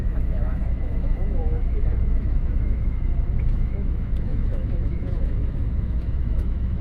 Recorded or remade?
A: remade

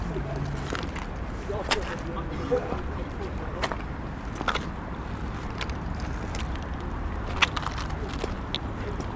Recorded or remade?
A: recorded